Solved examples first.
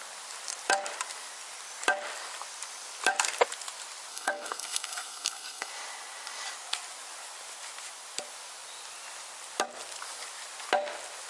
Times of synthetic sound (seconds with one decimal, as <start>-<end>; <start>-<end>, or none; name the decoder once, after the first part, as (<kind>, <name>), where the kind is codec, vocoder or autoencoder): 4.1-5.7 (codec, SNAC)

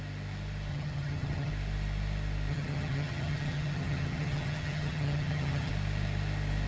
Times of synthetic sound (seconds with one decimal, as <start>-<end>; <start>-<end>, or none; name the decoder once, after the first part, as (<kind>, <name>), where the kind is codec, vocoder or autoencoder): 0.7-1.5 (vocoder, HiFi-GAN); 2.5-5.7

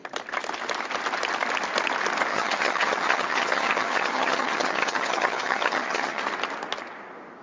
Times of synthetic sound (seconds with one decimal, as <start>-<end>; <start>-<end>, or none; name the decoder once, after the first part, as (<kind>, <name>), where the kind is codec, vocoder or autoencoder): 2.3-6.2 (vocoder, HiFi-GAN)

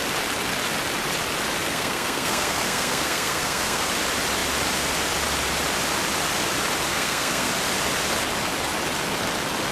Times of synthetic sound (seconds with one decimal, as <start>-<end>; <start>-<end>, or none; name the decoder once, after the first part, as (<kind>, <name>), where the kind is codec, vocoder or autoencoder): 1.7-3.9 (codec, SNAC); 6.9-7.5

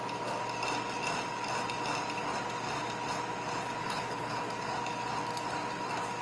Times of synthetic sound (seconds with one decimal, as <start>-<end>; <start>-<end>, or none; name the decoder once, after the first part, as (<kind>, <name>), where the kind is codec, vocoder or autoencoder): 3.8-4.4 (codec, HILCodec)

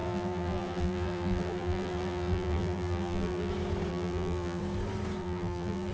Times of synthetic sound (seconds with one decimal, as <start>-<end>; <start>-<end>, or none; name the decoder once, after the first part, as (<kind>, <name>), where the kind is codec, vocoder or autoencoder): 0.0-3.5 (vocoder, BigVGAN v2); 3.9-4.6; 5.2-5.9

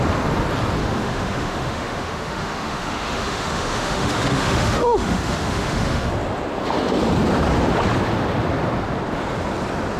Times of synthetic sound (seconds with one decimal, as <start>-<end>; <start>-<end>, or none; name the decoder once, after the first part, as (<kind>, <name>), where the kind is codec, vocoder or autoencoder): 0.8-6.1 (autoencoder, DAC-VAE)